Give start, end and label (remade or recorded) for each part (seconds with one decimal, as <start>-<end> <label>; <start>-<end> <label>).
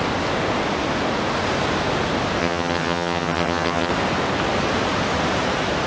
0.0-2.4 recorded; 2.4-3.9 remade; 3.9-5.9 recorded